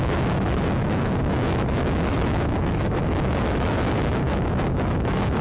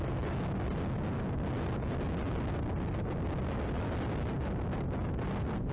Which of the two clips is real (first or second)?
second